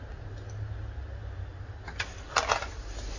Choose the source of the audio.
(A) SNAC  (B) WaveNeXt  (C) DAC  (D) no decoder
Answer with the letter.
D